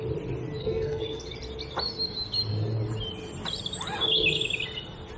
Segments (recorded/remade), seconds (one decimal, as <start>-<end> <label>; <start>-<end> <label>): 0.0-0.6 recorded; 0.6-1.2 remade; 1.2-5.2 recorded